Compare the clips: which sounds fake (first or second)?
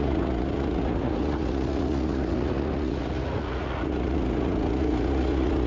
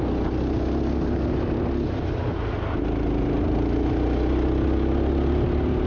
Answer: first